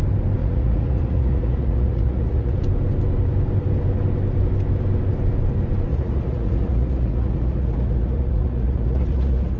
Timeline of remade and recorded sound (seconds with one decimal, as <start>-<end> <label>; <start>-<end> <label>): 0.0-0.4 recorded; 0.4-2.6 remade; 2.6-5.9 recorded; 5.9-9.6 remade